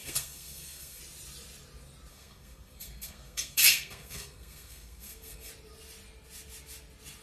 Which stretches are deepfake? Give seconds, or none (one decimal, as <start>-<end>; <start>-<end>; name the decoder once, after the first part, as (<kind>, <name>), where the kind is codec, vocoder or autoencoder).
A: 0.0-1.0 (codec, SNAC); 2.1-5.5